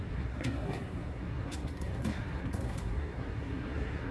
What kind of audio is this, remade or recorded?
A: remade